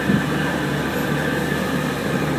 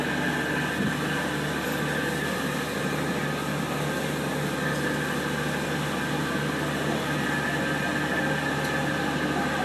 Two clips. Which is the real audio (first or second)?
second